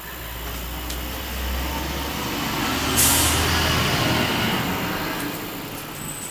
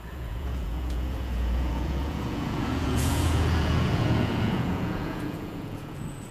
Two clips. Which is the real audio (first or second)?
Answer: first